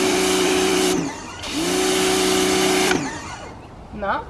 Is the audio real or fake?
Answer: fake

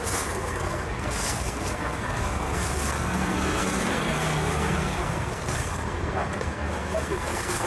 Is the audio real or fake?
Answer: fake